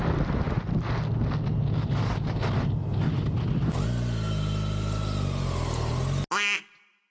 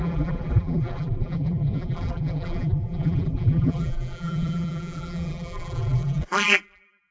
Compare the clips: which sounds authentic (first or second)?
first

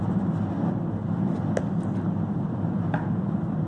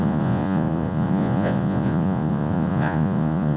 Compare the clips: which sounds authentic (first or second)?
first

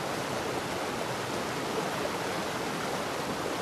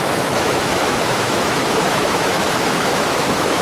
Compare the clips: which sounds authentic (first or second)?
first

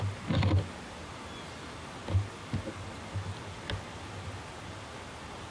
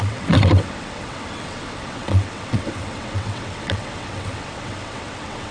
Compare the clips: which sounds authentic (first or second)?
first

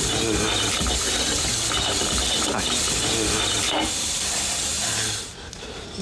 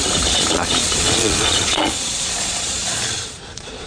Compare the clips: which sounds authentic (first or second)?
first